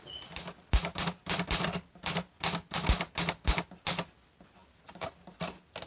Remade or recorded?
recorded